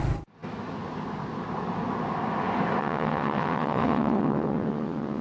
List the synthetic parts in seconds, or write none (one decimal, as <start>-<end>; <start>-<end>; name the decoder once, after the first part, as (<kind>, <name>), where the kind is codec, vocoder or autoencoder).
2.8-5.2 (vocoder, WaveNeXt)